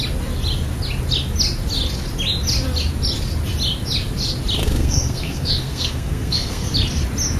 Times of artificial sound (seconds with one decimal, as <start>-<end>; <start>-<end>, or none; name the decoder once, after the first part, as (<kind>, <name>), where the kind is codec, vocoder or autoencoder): 4.6-6.7 (codec, SNAC)

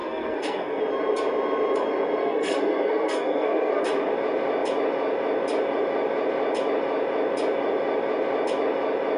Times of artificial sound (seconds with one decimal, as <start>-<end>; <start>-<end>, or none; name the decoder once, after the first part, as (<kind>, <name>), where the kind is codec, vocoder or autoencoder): 0.0-0.8 (codec, SNAC); 2.2-3.8

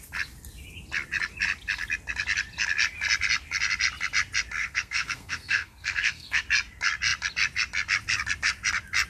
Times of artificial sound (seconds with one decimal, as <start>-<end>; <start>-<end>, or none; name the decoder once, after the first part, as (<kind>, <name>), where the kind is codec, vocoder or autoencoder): 4.6-6.4 (codec, SNAC)

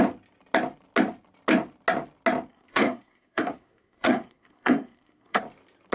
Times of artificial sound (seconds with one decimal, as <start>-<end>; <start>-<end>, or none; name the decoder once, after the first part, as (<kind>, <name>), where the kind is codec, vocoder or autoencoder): 2.5-5.4 (codec, SNAC)

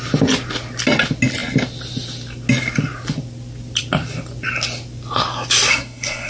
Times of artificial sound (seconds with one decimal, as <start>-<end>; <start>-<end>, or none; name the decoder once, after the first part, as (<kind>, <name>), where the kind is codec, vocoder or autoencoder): 5.7-6.3 (codec, SNAC)

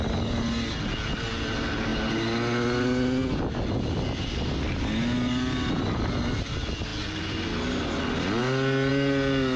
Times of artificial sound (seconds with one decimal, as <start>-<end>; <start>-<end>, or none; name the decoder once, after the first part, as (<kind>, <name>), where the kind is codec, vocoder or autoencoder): none

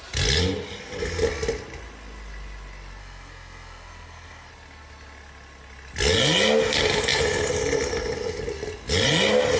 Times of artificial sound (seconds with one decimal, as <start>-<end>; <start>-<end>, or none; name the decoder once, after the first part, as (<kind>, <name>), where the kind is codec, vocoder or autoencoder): 3.0-4.5 (codec, SNAC)

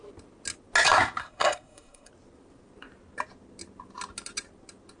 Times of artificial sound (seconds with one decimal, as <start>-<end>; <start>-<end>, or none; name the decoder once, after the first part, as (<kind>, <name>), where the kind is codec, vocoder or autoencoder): 1.2-2.1 (codec, SNAC)